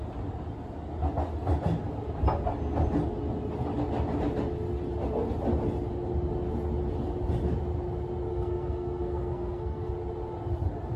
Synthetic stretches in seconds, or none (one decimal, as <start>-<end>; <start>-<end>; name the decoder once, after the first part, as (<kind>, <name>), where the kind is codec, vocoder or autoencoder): 8.3-9.9 (codec, SNAC)

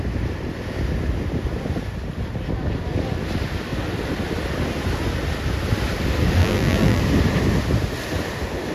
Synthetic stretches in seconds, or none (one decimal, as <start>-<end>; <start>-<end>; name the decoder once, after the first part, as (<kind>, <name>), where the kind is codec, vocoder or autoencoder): 6.4-7.0 (vocoder, BigVGAN v2)

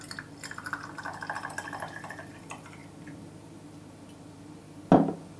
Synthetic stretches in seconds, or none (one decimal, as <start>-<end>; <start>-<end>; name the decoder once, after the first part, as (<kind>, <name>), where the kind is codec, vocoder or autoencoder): none

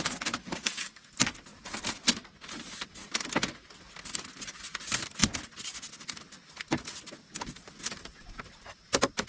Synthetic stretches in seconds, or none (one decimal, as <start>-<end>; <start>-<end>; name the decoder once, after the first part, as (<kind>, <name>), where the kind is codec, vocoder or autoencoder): 0.4-1.1 (codec, DAC)

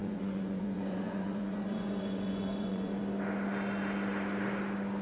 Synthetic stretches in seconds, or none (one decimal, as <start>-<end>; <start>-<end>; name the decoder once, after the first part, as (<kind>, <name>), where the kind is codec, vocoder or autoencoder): 0.0-3.0 (vocoder, Vocos)

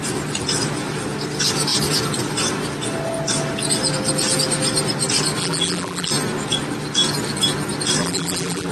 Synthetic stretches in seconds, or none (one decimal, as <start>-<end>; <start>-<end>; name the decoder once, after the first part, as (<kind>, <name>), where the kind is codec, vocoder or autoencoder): 5.4-6.1 (vocoder, BigVGAN v2); 8.0-8.7

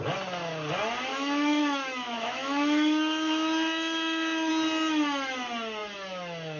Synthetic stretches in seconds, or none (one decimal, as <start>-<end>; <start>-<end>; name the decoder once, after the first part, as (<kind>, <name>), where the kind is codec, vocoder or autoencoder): 1.1-4.5 (autoencoder, DAC-VAE)

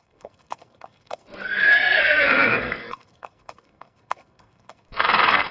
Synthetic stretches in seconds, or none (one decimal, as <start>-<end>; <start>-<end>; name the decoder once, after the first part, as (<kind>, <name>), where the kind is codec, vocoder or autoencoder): 0.0-5.5 (codec, SNAC)